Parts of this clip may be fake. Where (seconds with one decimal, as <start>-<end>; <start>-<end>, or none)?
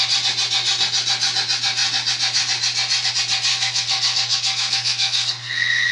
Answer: 3.5-5.9